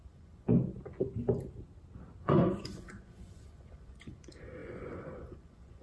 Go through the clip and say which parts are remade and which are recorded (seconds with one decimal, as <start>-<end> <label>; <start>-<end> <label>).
0.0-0.5 remade; 0.5-2.2 recorded; 2.2-5.8 remade